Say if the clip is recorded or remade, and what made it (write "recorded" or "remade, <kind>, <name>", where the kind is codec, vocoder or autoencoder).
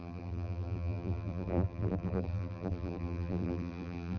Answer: remade, vocoder, BigVGAN v2